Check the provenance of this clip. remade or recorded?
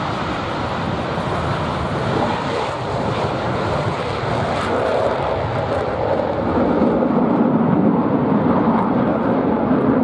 recorded